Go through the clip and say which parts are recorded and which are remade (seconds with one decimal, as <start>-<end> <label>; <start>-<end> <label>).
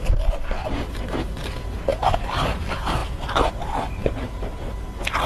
0.0-5.3 recorded